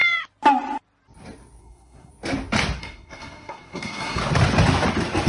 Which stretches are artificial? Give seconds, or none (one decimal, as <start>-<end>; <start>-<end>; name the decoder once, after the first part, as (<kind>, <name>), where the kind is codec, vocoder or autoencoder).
1.6-2.1 (codec, SNAC); 2.8-4.2